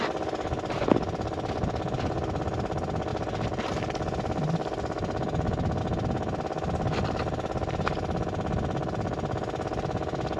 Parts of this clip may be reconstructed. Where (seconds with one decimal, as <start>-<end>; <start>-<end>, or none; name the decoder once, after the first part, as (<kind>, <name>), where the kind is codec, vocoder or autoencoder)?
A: none